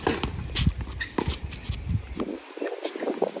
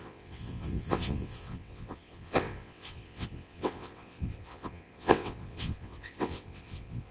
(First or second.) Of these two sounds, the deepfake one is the second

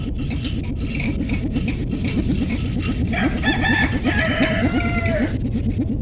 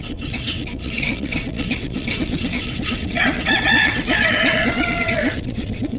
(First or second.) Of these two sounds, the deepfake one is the second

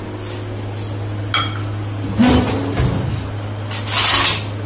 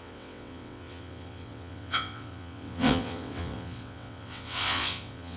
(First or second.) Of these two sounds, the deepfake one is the second